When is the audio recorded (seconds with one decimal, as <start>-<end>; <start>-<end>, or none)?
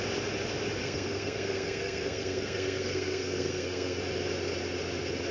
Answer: 0.0-0.8; 4.0-5.3